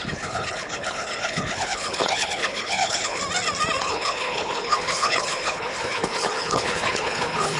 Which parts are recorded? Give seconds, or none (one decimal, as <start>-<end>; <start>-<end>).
3.2-3.8